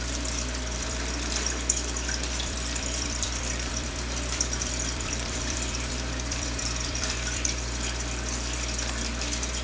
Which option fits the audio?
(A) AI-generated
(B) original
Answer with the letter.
A